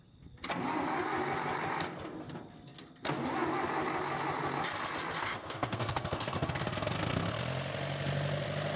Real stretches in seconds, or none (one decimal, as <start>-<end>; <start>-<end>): 0.0-5.2; 7.4-8.8